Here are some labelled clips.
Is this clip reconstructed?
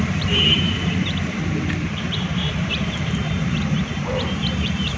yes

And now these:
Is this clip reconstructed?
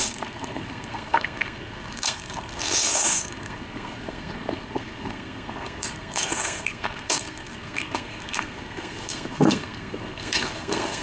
yes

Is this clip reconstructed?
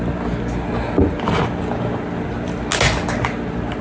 no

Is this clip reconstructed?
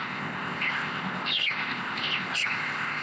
yes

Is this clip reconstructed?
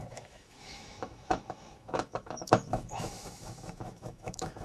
yes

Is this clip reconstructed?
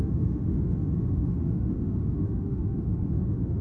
yes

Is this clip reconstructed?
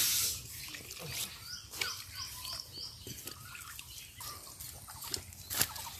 no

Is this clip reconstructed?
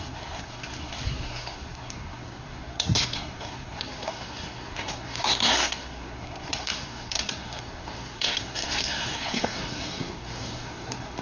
yes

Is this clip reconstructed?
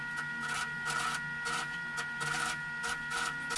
no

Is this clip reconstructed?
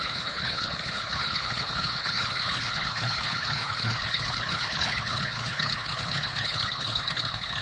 yes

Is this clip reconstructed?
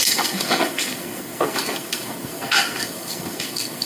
yes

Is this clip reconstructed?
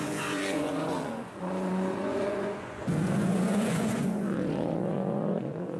yes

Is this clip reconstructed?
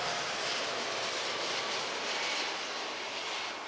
no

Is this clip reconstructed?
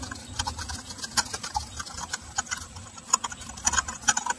no